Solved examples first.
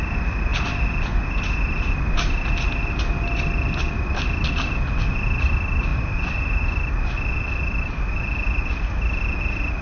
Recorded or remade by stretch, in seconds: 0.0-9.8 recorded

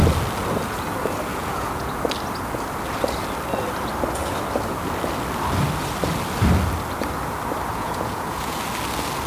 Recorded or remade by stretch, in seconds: 0.0-1.3 recorded; 1.3-1.9 remade; 1.9-7.7 recorded; 7.7-8.6 remade; 8.6-9.3 recorded

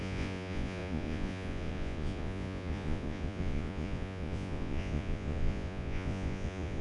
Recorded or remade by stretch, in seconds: 0.0-6.8 remade